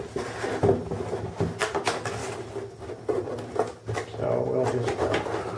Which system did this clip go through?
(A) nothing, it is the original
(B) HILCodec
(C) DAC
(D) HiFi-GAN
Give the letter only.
A